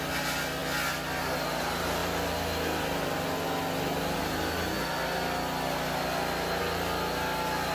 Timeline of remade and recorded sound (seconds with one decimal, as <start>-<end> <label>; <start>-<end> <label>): 0.0-7.7 recorded

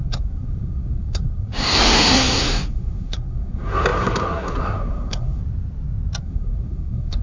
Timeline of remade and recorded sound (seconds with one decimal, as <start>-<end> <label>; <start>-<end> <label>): 0.0-5.4 remade; 5.4-6.2 recorded; 6.2-7.2 remade

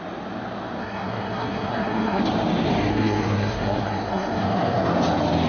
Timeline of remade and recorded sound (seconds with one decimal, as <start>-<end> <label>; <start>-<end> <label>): 0.0-0.8 recorded; 0.8-2.2 remade; 2.2-2.9 recorded; 2.9-4.9 remade; 4.9-5.5 recorded